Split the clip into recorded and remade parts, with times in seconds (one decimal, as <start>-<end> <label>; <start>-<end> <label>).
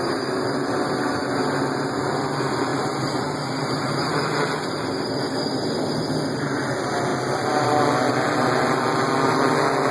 0.0-7.1 recorded; 7.1-7.8 remade; 7.8-9.9 recorded